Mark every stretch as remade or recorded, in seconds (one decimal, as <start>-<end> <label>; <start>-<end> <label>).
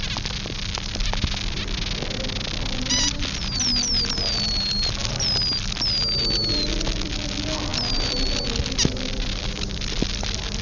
0.0-10.6 recorded